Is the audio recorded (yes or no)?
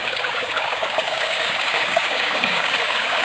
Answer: no